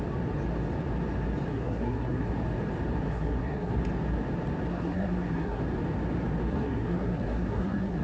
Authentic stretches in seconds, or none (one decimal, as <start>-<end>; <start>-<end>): 0.0-1.5; 2.3-3.1; 3.8-4.7; 5.6-6.5